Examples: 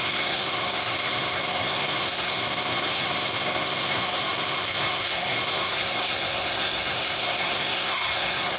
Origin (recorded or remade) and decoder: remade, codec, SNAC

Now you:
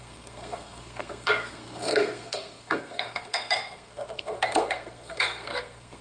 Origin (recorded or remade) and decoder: remade, codec, SNAC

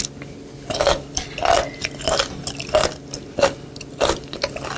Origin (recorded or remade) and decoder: recorded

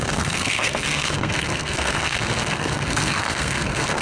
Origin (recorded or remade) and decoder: remade, codec, SNAC